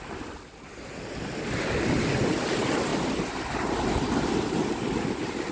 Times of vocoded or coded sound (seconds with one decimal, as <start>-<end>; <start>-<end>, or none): none